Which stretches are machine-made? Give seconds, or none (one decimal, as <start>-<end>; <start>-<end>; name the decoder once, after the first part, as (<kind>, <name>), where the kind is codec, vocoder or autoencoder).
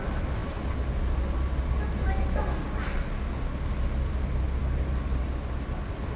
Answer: none